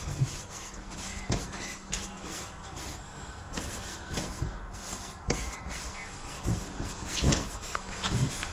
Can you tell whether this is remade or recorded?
remade